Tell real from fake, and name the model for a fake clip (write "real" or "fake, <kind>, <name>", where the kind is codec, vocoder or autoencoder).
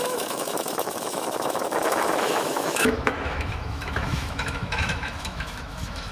fake, autoencoder, DAC-VAE